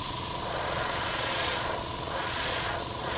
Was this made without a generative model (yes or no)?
no